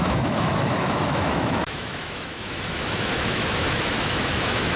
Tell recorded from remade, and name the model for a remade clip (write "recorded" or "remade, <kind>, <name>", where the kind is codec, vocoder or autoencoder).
remade, autoencoder, DAC-VAE